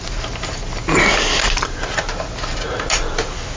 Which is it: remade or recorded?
recorded